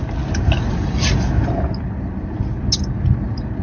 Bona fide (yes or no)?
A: yes